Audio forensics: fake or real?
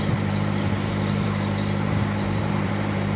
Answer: fake